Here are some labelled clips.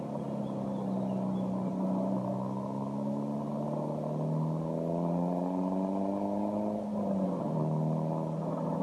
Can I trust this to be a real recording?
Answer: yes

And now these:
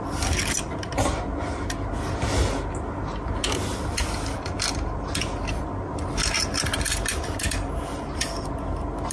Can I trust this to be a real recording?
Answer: yes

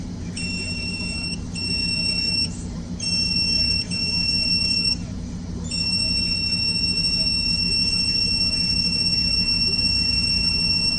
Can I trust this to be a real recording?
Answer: no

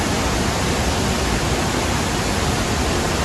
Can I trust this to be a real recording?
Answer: yes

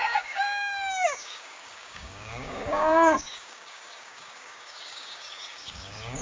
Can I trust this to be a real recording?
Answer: no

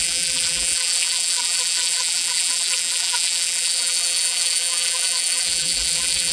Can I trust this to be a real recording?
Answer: no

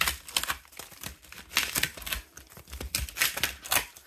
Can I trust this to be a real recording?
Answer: yes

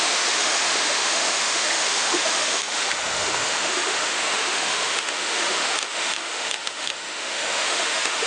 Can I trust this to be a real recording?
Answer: no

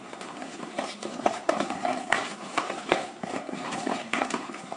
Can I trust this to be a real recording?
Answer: no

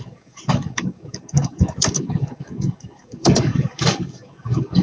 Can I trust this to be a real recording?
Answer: no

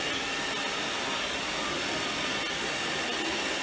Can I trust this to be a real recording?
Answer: yes